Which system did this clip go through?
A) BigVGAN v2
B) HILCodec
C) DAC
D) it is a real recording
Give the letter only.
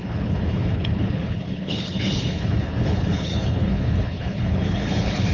B